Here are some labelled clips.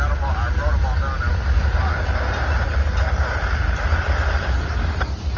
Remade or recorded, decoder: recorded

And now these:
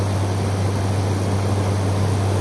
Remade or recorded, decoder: recorded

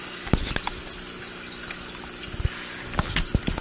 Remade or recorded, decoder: recorded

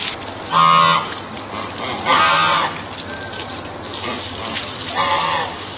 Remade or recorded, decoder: recorded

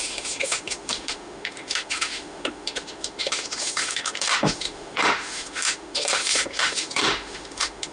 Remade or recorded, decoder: remade, autoencoder, DAC-VAE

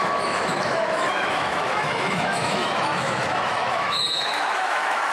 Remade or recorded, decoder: remade, autoencoder, DAC-VAE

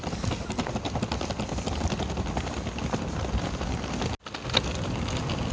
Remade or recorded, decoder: recorded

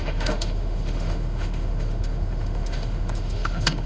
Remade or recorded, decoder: remade, autoencoder, DAC-VAE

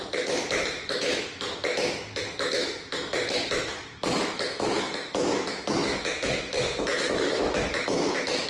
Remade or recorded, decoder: remade, autoencoder, DAC-VAE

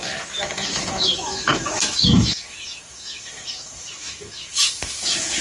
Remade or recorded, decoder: remade, autoencoder, DAC-VAE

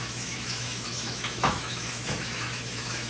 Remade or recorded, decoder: remade, autoencoder, DAC-VAE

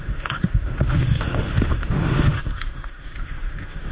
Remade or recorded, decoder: remade, autoencoder, DAC-VAE